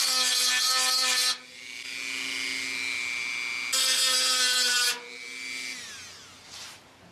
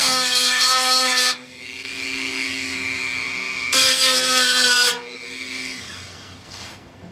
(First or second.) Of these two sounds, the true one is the first